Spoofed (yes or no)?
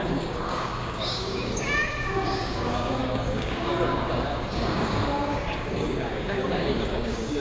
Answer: yes